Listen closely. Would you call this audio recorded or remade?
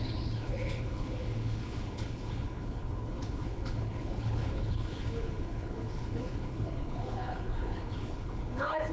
remade